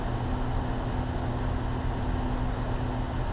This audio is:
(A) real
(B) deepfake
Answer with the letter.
A